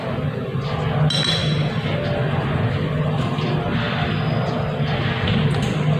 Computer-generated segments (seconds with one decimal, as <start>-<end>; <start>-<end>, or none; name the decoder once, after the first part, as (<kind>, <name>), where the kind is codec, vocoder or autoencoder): none

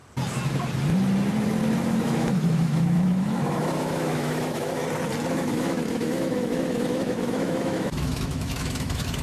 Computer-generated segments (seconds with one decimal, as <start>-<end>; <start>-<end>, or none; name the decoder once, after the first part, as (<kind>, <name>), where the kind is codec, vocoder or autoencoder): 1.8-4.8 (autoencoder, DAC-VAE); 5.3-9.2

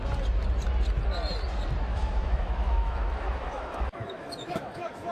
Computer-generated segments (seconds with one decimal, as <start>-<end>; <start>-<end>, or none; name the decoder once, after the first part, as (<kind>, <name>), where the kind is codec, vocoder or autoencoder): 1.9-5.1 (autoencoder, DAC-VAE)

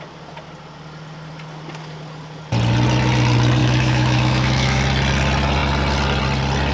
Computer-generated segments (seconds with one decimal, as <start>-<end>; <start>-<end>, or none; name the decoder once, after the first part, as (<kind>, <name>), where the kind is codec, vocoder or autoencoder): 3.6-4.8 (autoencoder, DAC-VAE)

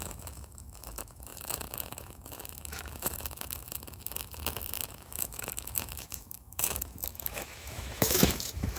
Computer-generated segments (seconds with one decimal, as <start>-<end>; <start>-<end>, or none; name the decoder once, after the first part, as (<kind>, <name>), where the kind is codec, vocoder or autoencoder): 0.0-8.8 (autoencoder, DAC-VAE)

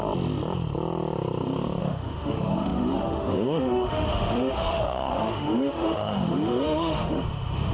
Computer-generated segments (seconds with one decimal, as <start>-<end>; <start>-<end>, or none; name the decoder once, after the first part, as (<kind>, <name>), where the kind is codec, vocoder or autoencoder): 1.8-7.7 (autoencoder, DAC-VAE)

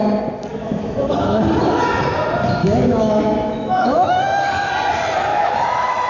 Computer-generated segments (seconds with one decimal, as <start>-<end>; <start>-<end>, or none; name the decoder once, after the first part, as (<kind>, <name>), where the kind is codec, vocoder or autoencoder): 0.5-1.4 (autoencoder, DAC-VAE); 2.6-4.7; 5.3-6.1

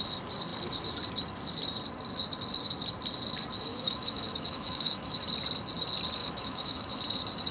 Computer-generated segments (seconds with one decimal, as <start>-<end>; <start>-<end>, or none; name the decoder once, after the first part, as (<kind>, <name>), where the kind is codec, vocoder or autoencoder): 3.7-5.1 (autoencoder, DAC-VAE); 6.2-7.0